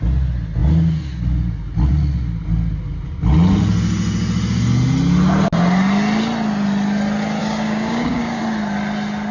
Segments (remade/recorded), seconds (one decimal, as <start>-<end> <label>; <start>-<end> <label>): 0.0-7.4 recorded; 7.4-8.4 remade; 8.4-9.3 recorded